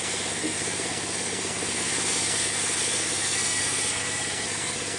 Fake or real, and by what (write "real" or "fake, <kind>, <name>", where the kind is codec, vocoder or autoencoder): fake, codec, SNAC